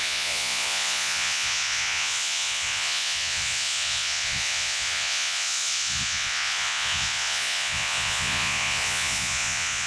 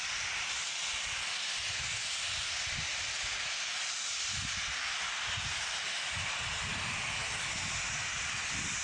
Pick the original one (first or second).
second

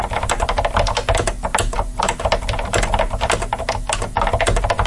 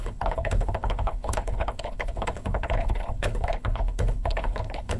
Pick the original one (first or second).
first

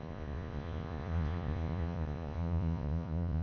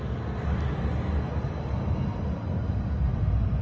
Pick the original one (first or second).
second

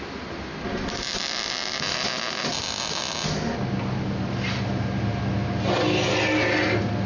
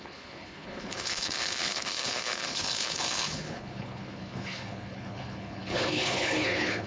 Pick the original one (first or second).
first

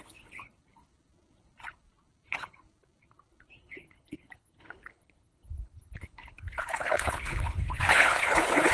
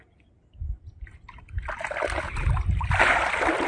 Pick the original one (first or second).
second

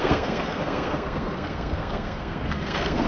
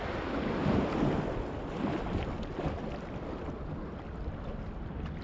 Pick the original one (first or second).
second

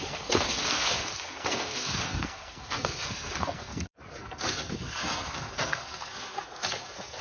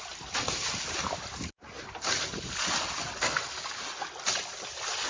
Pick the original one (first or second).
second